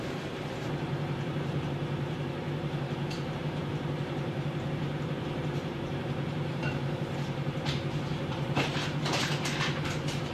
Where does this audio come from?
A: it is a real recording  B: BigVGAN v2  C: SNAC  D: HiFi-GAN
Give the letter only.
B